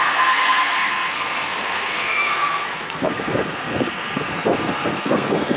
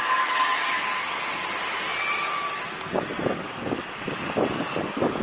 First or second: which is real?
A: second